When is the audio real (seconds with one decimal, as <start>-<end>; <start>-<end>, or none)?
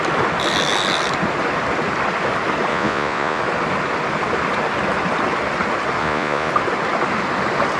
0.0-2.7; 3.4-6.0; 6.5-7.8